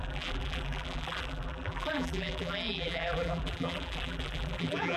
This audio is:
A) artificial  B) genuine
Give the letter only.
A